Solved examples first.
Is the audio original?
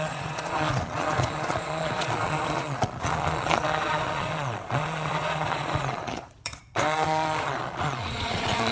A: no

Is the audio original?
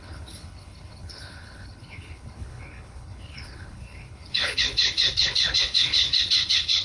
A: no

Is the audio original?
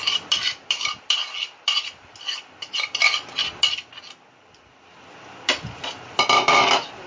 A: no